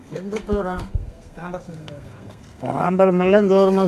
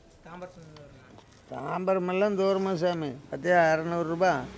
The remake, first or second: first